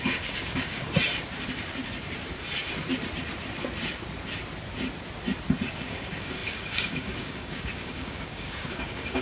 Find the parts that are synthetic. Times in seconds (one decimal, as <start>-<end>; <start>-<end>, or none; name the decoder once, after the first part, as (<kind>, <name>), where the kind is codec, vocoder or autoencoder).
0.0-0.8 (codec, DAC); 5.7-9.2